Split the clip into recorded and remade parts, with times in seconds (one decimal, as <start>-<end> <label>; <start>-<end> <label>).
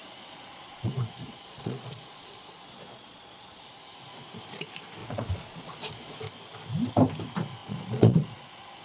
0.0-3.7 remade; 3.7-5.0 recorded; 5.0-6.2 remade; 6.2-7.6 recorded; 7.6-8.8 remade